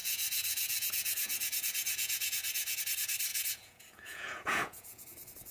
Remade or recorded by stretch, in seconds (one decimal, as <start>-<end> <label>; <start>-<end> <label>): 0.0-2.8 remade; 2.8-3.3 recorded; 3.3-5.5 remade